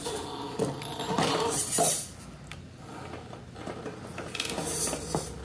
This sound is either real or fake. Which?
real